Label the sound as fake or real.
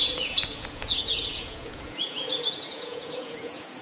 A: fake